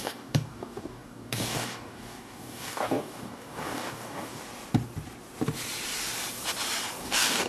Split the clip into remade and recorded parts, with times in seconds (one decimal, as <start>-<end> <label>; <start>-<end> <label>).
0.0-4.4 remade; 4.4-7.0 recorded; 7.0-7.5 remade